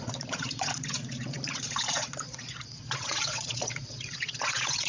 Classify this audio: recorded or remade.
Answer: remade